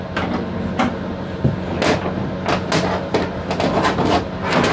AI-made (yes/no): no